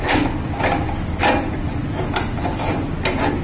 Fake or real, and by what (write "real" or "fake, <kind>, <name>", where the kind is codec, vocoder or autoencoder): real